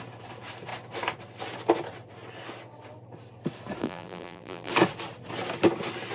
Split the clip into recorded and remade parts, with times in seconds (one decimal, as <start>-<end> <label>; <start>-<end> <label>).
0.0-3.8 recorded; 3.8-4.7 remade; 4.7-6.1 recorded